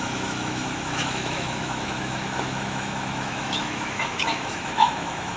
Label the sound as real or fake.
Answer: fake